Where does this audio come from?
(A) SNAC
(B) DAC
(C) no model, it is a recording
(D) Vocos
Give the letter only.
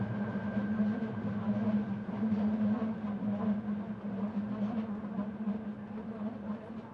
C